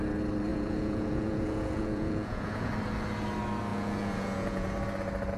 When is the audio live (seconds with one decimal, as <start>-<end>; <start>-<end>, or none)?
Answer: 0.0-0.5; 2.7-3.7; 4.7-5.4